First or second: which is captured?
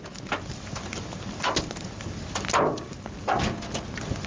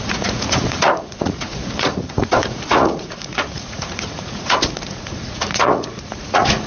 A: first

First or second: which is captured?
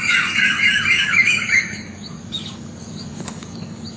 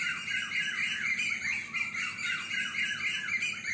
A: second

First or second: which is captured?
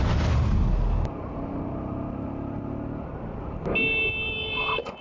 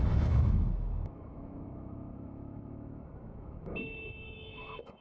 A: first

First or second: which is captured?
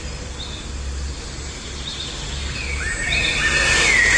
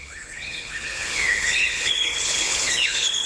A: first